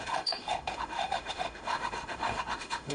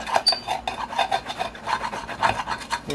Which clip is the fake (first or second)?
first